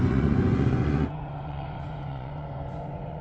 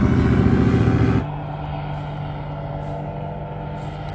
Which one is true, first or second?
second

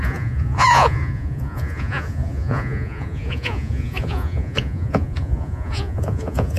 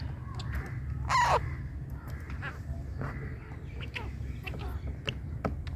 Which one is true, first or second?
second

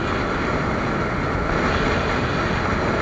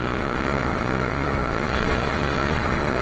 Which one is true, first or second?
first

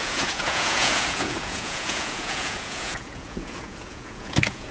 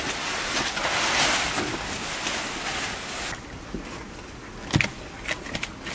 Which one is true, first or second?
second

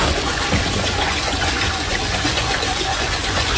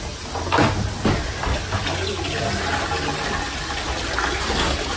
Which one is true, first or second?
second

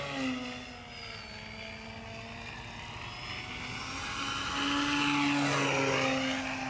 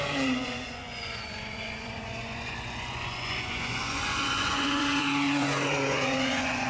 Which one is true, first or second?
first